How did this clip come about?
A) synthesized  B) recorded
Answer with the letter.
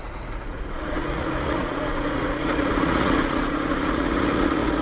A